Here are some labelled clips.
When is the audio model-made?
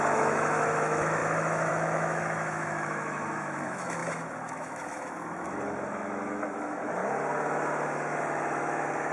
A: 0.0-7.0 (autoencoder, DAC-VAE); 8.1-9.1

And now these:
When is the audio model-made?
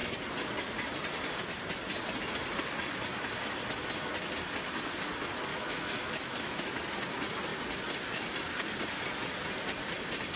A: 5.5-6.7 (autoencoder, DAC-VAE)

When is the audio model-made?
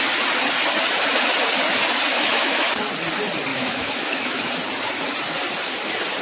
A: 2.1-2.7 (autoencoder, DAC-VAE); 3.5-4.5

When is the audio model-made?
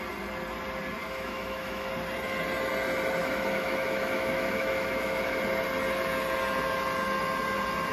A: 1.0-1.9 (autoencoder, DAC-VAE); 3.2-5.4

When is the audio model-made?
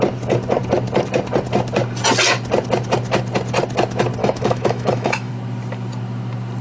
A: 4.2-5.3 (autoencoder, DAC-VAE)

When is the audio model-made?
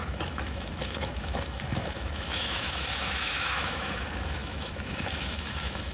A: 0.0-5.9 (autoencoder, DAC-VAE)